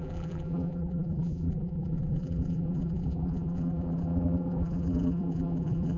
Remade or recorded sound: remade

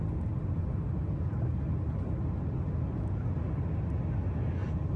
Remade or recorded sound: recorded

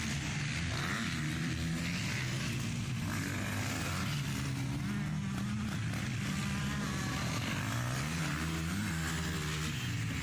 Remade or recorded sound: recorded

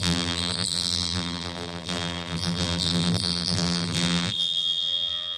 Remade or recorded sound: remade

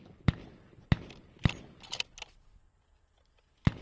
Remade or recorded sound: recorded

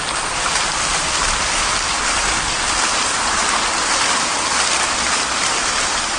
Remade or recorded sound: remade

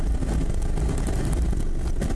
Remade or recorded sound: recorded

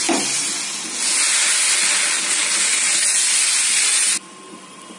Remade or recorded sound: recorded